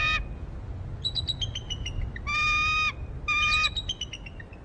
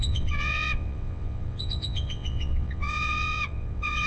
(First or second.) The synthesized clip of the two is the second